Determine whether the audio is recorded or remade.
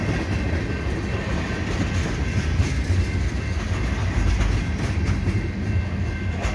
recorded